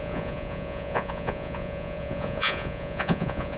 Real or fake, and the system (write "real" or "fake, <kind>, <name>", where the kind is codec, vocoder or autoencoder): fake, vocoder, Vocos